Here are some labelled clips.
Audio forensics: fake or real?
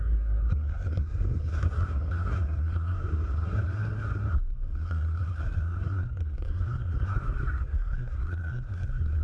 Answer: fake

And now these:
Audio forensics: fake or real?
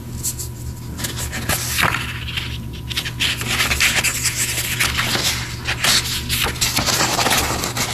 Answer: real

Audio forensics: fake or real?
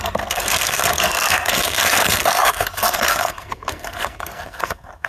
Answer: fake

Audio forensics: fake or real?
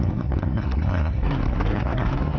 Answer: fake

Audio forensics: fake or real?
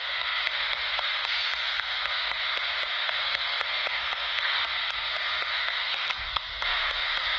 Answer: fake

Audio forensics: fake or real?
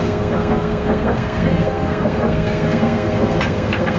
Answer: fake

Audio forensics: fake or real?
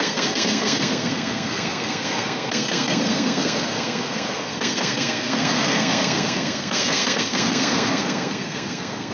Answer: fake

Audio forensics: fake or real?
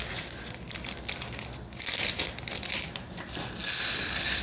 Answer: real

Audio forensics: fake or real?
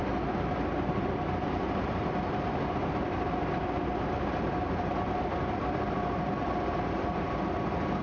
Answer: real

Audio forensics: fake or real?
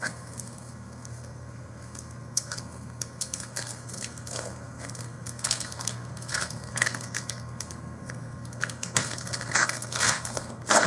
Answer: fake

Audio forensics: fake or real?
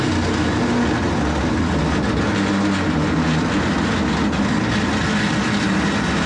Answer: real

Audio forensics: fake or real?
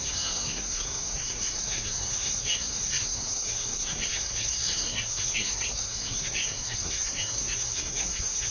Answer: fake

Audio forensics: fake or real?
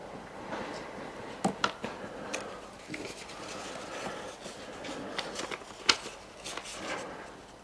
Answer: real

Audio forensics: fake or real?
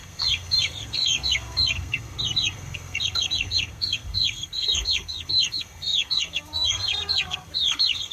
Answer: fake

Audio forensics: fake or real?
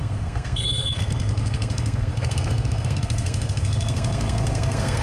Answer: fake